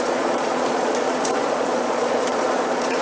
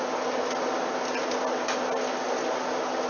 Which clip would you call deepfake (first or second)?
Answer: first